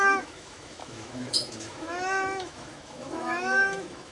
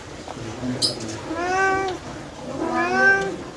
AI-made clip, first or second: first